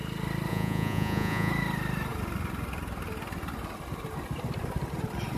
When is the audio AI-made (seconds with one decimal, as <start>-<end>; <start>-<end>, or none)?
0.5-1.5